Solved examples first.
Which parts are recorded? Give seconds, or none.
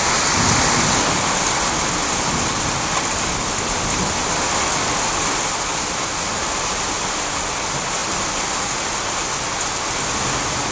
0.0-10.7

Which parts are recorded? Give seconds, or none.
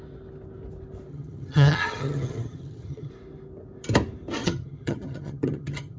0.0-1.1; 3.1-4.4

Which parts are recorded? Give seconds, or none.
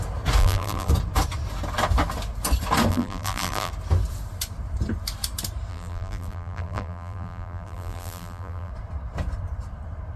0.0-0.4; 0.9-2.9; 3.7-5.7; 8.7-10.2